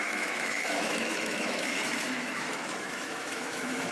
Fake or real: fake